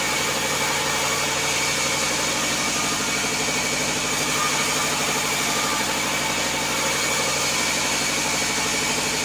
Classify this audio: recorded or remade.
recorded